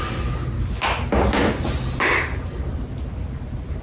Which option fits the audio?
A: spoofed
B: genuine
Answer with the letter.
B